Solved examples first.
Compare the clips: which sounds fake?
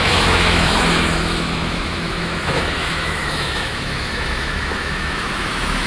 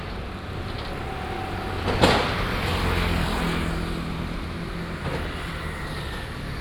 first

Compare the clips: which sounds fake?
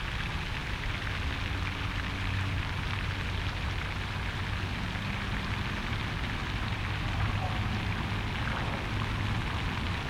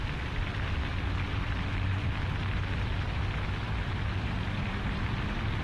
second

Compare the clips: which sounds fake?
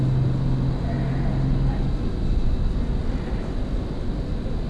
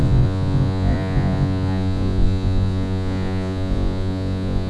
second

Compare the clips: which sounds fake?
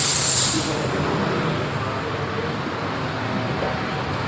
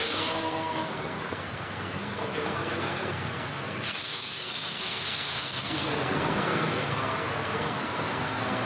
second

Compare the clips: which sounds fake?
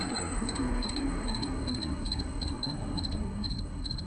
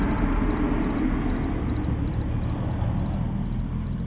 first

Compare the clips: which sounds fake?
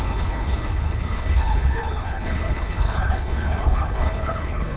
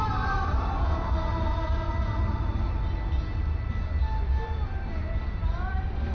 first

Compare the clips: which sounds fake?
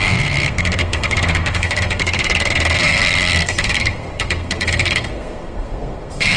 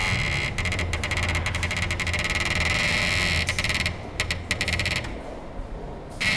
first